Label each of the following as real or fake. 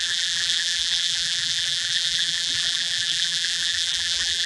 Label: fake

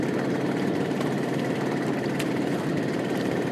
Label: fake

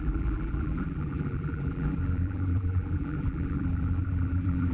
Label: fake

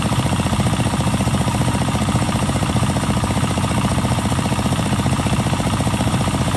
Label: fake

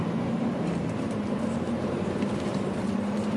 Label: fake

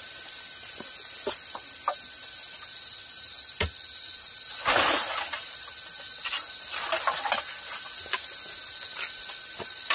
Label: real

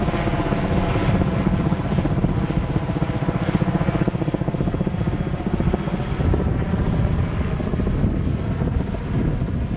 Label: real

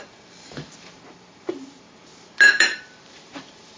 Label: fake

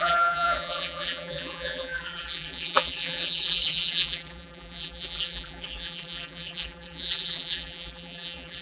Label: fake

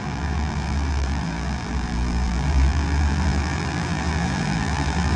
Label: fake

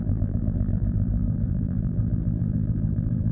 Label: fake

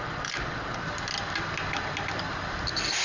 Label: real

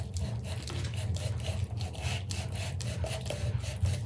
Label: real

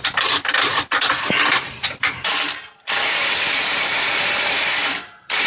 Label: fake